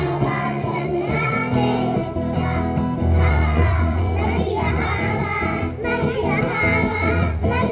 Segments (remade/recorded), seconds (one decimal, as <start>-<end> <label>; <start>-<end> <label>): 0.0-1.4 remade; 1.4-3.3 recorded; 3.3-5.6 remade; 5.6-6.9 recorded; 6.9-7.7 remade